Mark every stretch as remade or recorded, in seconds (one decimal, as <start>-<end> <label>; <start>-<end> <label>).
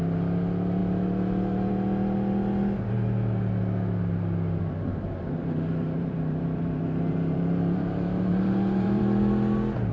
0.0-4.9 recorded; 4.9-9.0 remade; 9.0-9.9 recorded